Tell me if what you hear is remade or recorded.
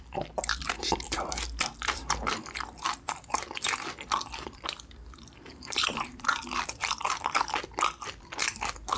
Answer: remade